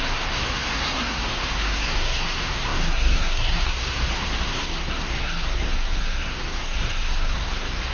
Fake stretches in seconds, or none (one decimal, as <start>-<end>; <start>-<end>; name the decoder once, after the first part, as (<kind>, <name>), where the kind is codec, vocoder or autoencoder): 0.0-7.9 (codec, SNAC)